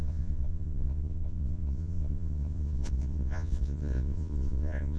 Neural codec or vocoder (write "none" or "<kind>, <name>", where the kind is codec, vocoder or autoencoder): vocoder, Vocos